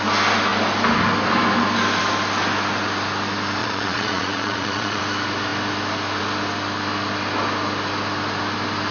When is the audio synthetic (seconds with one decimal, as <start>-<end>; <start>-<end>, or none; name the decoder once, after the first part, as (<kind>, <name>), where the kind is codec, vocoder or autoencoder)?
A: 3.6-5.0 (vocoder, Vocos)